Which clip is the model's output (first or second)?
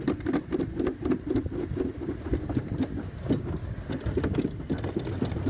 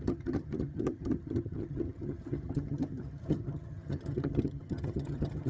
second